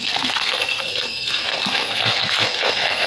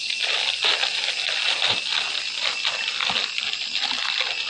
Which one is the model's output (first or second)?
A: first